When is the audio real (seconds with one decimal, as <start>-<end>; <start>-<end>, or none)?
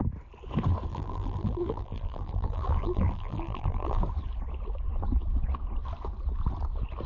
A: 0.0-0.9; 4.0-7.1